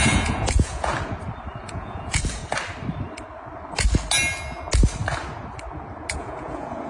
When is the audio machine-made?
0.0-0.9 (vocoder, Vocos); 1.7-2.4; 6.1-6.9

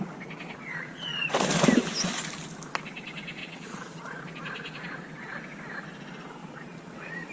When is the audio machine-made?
0.5-1.3 (vocoder, Vocos); 3.4-4.2; 6.4-7.3

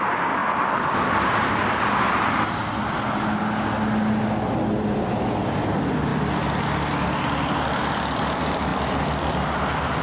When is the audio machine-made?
none

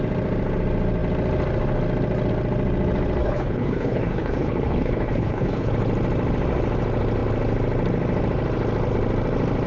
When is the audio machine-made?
3.2-5.7 (codec, HILCodec)

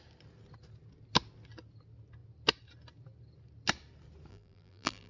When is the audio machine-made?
4.3-5.1 (vocoder, BigVGAN v2)